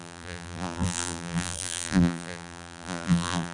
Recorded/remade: remade